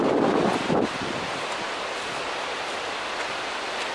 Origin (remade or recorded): recorded